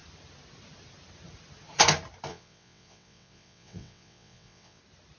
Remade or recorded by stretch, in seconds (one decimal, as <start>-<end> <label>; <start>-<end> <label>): 0.0-2.3 recorded; 2.3-4.8 remade; 4.8-5.2 recorded